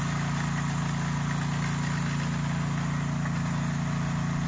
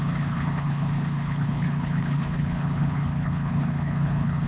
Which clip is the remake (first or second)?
second